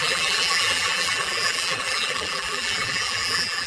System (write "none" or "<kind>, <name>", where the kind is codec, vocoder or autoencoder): vocoder, BigVGAN v2